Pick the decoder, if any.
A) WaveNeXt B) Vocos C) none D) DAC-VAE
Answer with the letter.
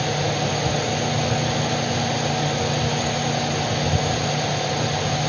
C